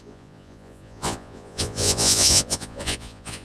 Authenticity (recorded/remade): remade